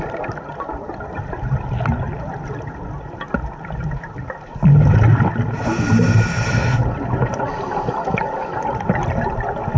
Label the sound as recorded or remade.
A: recorded